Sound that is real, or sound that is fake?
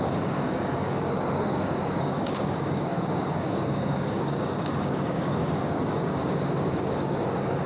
fake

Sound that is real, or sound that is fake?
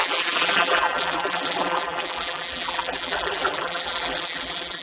fake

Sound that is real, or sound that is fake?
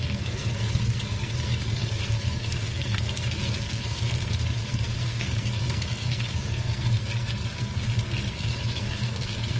fake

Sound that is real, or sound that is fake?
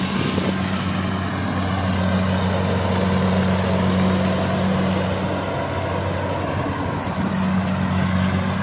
real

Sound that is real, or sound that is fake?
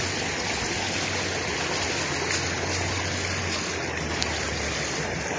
real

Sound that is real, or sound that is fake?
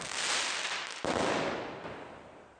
real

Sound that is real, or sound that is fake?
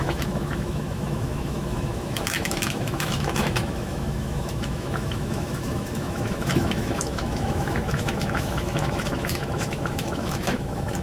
fake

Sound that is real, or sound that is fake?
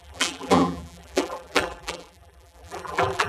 fake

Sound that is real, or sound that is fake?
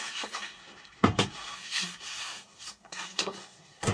fake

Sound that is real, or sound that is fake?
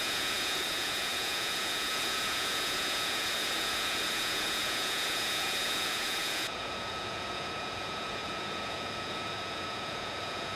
fake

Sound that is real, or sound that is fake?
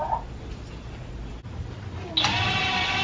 real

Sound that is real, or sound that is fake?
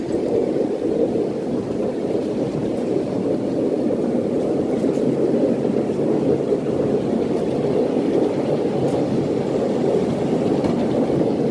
fake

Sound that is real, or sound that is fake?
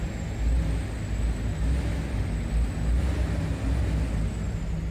real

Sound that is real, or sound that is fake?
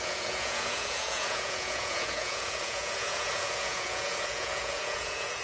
fake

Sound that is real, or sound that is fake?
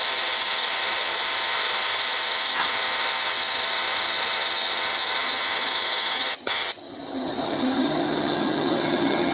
fake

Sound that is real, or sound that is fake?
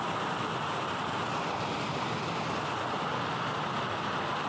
real